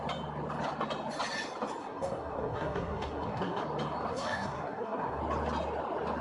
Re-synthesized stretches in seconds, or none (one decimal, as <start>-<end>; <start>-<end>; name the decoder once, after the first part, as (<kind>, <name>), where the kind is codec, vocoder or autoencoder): 1.8-3.6 (codec, SNAC); 4.1-5.2